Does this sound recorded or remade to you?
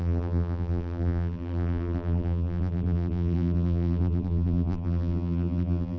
remade